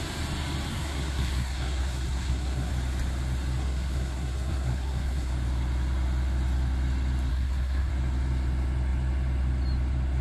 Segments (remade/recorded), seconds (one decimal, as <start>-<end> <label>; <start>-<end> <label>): 0.0-0.7 recorded; 0.7-2.7 remade; 2.7-3.6 recorded; 3.6-5.3 remade; 5.3-7.3 recorded; 7.3-7.9 remade; 7.9-10.2 recorded